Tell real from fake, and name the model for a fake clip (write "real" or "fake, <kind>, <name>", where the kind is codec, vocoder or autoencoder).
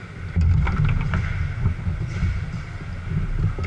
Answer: real